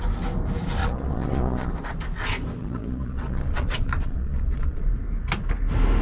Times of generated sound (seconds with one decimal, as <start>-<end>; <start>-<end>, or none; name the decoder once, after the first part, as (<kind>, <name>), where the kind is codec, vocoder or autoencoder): 0.8-1.7 (vocoder, Vocos); 2.6-4.9